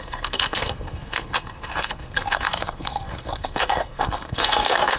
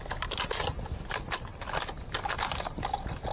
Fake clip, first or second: first